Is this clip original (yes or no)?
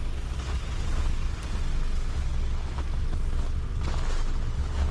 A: yes